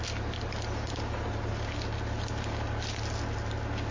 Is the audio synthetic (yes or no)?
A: no